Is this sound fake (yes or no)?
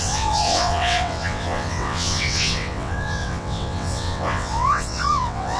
yes